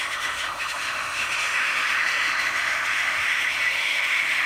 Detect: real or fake fake